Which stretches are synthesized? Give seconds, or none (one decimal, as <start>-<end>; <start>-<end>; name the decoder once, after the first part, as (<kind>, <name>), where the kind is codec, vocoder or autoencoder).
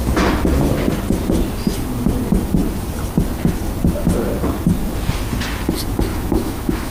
6.1-6.9 (autoencoder, DAC-VAE)